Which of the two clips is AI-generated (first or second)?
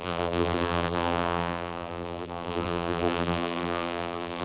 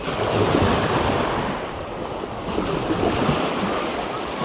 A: first